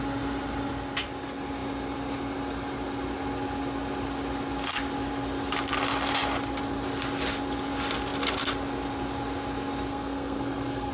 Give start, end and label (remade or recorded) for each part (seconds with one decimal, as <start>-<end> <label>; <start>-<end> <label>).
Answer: 0.0-9.9 recorded; 9.9-10.9 remade